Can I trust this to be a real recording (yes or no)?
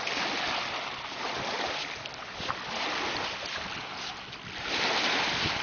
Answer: yes